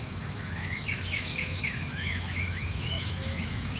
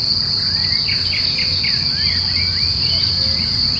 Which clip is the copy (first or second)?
first